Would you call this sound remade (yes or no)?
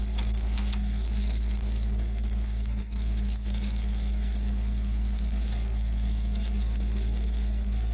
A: yes